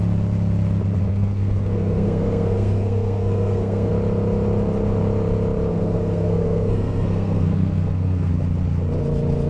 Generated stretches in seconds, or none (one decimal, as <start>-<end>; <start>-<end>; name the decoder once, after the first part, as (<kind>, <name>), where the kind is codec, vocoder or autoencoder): 1.0-3.9 (codec, SNAC); 5.7-8.3